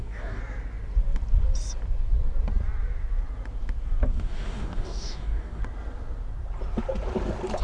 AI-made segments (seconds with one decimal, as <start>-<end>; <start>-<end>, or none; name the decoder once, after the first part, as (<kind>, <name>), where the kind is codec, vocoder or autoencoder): 0.0-0.4 (codec, DAC); 4.1-5.6